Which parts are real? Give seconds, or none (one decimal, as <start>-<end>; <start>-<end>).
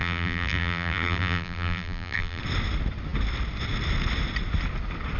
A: 2.4-5.2